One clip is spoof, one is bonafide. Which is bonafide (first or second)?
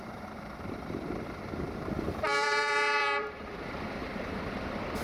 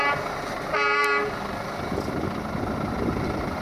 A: second